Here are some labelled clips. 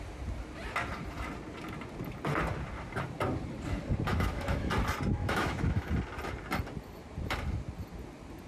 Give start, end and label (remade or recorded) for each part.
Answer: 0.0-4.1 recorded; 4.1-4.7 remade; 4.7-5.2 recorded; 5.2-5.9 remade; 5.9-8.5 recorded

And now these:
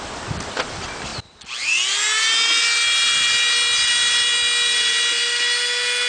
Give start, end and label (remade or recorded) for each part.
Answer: 0.0-6.1 recorded

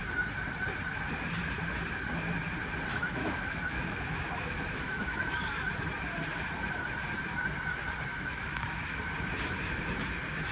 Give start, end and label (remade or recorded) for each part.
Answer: 0.0-2.9 recorded; 2.9-5.5 remade; 5.5-8.1 recorded; 8.1-9.0 remade; 9.0-10.5 recorded

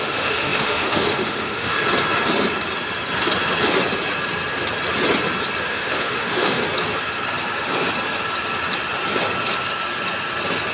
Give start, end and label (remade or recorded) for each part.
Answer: 0.0-1.8 remade; 1.8-5.7 recorded; 5.7-6.6 remade; 6.6-10.7 recorded

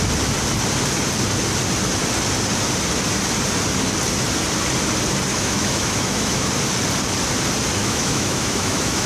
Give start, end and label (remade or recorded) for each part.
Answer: 0.0-5.3 recorded; 5.3-6.5 remade; 6.5-7.8 recorded; 7.8-9.1 remade